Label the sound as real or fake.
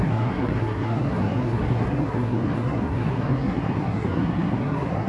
fake